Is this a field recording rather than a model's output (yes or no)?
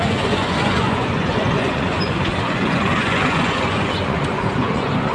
no